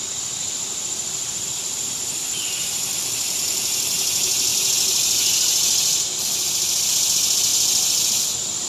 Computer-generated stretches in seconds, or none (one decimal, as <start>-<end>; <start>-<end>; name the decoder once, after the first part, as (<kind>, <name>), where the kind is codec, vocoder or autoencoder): none